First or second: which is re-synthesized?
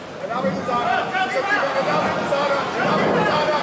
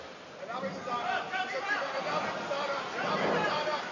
second